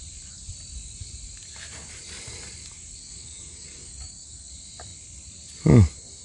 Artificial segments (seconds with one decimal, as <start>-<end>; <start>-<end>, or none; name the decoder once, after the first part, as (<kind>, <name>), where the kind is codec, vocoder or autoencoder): 3.0-4.5 (codec, DAC)